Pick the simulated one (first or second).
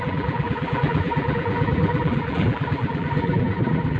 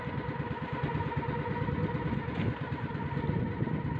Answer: first